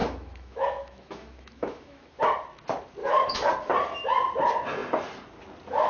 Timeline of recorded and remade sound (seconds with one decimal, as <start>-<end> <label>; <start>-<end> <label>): 0.0-2.2 remade; 2.2-3.0 recorded; 3.0-3.5 remade; 3.5-5.9 recorded